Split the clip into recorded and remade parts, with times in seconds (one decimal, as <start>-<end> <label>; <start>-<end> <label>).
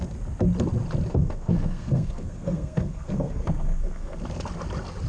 0.0-1.1 recorded; 1.1-4.2 remade; 4.2-5.1 recorded